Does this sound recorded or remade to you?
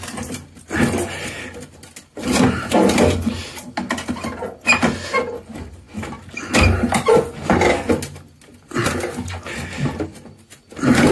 recorded